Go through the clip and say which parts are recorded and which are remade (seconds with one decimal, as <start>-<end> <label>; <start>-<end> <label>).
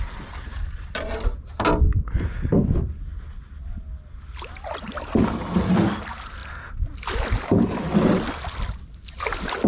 0.0-9.7 recorded